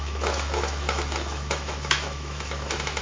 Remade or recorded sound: remade